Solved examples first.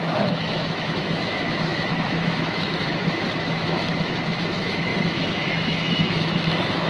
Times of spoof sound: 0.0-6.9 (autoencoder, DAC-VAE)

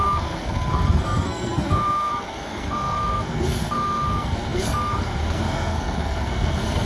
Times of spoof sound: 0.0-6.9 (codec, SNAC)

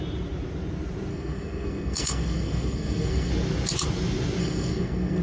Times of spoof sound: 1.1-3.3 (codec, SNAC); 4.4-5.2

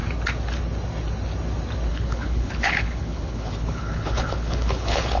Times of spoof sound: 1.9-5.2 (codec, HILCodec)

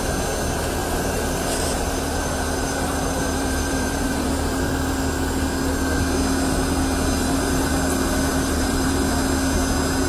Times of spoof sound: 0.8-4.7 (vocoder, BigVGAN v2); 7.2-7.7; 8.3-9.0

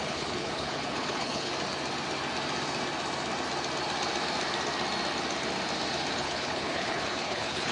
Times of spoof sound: 0.0-1.5 (codec, HILCodec); 6.1-7.7

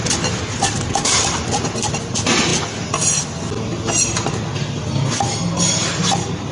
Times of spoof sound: 0.0-2.0 (vocoder, BigVGAN v2)